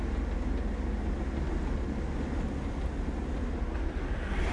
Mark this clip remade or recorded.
recorded